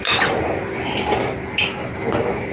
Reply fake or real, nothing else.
real